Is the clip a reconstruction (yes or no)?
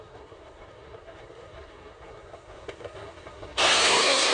yes